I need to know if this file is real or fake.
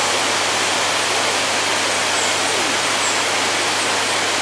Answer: real